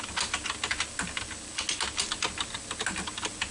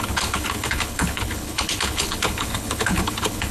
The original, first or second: first